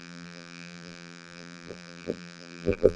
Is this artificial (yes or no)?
yes